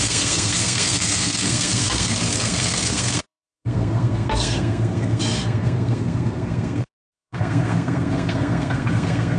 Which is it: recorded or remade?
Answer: remade